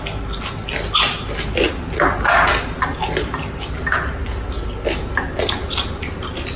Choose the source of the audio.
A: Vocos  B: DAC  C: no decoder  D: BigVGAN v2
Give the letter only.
C